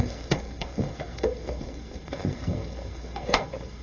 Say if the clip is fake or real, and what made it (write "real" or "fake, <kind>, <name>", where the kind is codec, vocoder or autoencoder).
fake, codec, SNAC